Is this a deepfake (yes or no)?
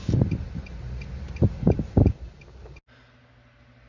no